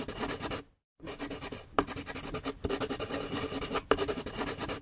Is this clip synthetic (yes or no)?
no